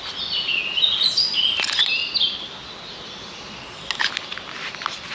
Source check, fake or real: real